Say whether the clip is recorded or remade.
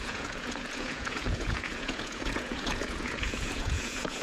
remade